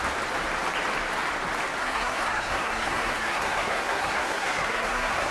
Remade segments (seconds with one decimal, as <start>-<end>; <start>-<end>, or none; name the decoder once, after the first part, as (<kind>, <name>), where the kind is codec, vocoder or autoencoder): 1.8-5.3 (codec, SNAC)